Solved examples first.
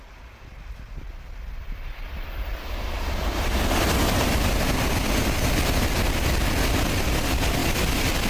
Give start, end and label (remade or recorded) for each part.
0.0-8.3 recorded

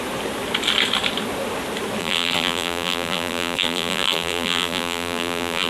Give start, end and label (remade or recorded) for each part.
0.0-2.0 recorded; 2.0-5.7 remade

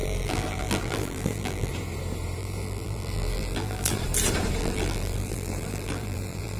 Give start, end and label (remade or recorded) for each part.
0.0-1.7 remade; 1.7-2.4 recorded; 2.4-4.0 remade; 4.0-4.6 recorded; 4.6-6.6 remade